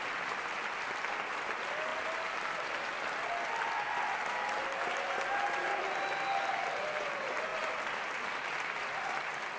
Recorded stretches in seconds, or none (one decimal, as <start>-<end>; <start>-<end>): 0.0-9.6